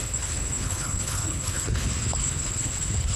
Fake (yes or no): yes